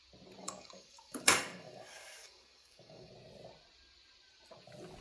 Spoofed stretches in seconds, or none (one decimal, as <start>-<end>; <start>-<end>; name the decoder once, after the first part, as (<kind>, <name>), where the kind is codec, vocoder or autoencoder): 0.4-3.1 (codec, DAC)